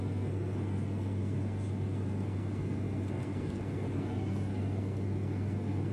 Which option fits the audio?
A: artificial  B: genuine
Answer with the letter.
A